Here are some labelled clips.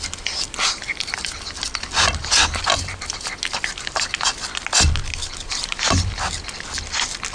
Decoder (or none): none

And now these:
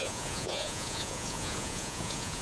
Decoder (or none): vocoder, Vocos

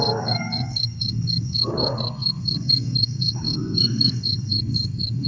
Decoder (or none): codec, SNAC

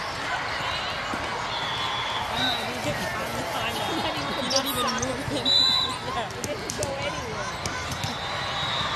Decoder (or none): none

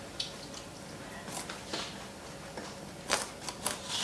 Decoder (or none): none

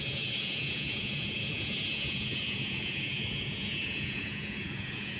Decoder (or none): vocoder, Vocos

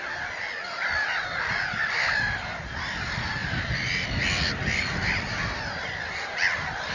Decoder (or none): none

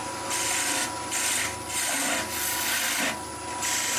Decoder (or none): none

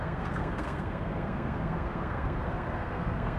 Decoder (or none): codec, SNAC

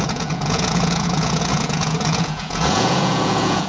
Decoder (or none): vocoder, Vocos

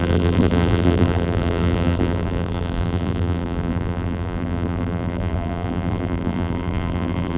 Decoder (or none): vocoder, BigVGAN v2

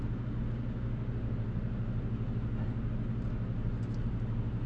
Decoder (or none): none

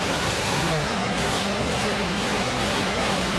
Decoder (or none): codec, SNAC